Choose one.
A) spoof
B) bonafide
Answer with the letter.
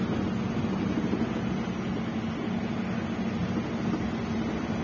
B